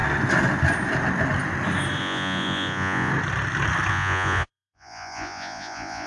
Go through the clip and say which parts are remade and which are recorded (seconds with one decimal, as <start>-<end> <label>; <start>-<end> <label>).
0.0-2.0 recorded; 2.0-3.1 remade; 3.1-3.9 recorded; 3.9-6.1 remade